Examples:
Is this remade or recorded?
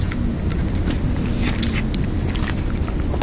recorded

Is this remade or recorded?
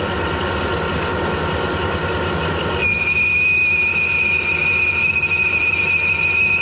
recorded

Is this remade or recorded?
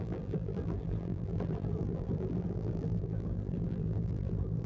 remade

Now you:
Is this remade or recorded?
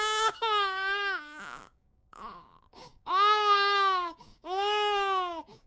remade